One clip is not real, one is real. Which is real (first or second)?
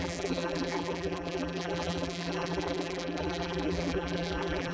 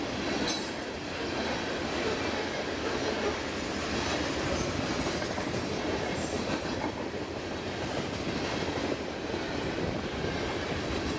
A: second